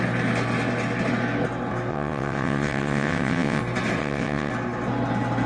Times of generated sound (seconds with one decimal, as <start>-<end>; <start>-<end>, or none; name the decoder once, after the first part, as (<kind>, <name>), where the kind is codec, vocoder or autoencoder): 1.9-3.6 (vocoder, WaveNeXt); 4.0-4.5